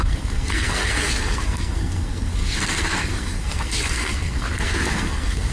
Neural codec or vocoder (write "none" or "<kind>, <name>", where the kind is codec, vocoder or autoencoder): codec, SNAC